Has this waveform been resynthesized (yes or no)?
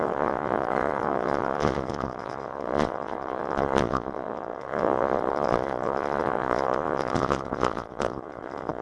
yes